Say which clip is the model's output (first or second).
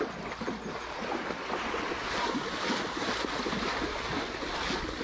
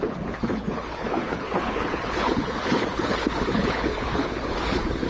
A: second